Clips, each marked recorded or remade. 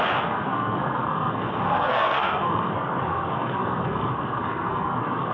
remade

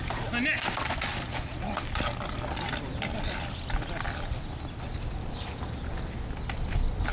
recorded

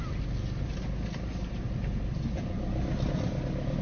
recorded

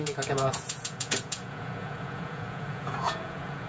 remade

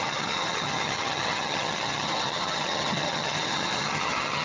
remade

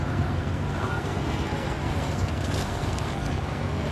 remade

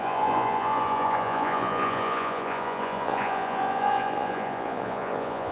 remade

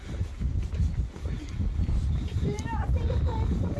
recorded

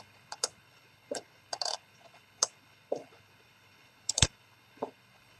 remade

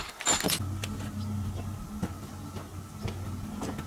recorded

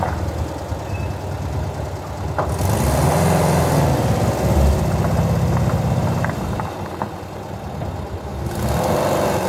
recorded